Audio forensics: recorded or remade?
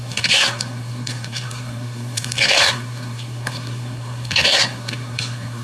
remade